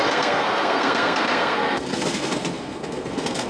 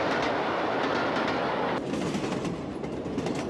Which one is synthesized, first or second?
first